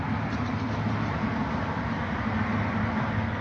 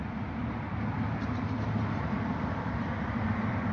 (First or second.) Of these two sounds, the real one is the first